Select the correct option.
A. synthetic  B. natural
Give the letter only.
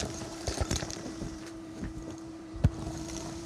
A